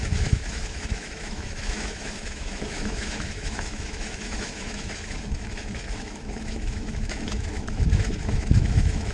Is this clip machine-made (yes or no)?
yes